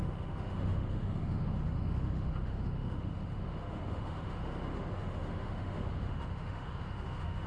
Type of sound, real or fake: fake